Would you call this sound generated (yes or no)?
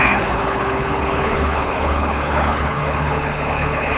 yes